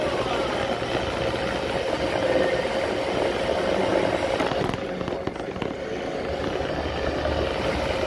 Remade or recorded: recorded